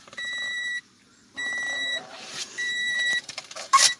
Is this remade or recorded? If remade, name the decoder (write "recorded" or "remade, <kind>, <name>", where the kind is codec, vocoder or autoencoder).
remade, vocoder, BigVGAN v2